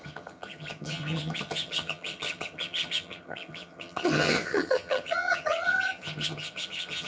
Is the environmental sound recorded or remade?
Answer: remade